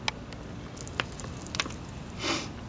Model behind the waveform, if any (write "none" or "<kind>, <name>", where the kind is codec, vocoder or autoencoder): none